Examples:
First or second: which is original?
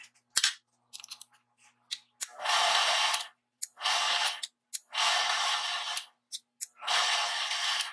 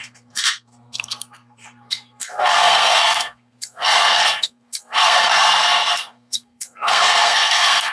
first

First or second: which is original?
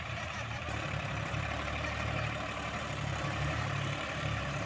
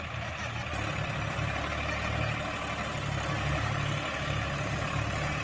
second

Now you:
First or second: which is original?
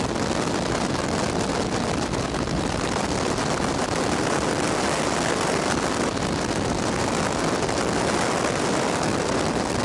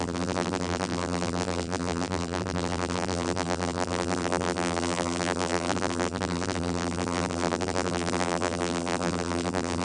first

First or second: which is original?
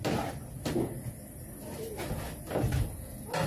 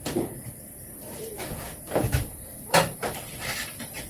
first